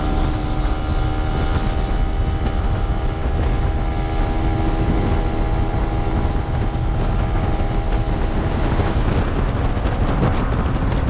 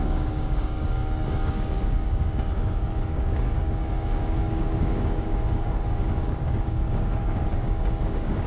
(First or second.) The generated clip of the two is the second